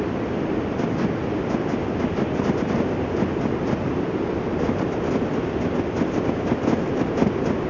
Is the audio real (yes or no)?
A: yes